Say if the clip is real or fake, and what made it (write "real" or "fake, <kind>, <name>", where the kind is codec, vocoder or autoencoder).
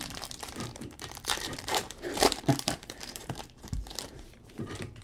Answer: fake, vocoder, BigVGAN v2